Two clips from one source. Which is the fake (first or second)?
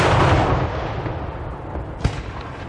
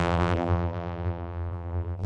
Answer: second